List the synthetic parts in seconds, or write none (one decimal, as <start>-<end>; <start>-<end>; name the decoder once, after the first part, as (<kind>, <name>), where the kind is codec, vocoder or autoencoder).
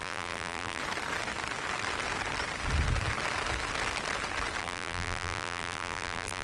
0.0-0.8 (vocoder, BigVGAN v2); 4.6-6.4